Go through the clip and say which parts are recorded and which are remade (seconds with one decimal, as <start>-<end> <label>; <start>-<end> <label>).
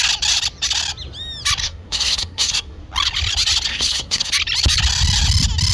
0.0-1.6 recorded; 1.6-2.8 remade; 2.8-3.7 recorded; 3.7-4.3 remade; 4.3-5.7 recorded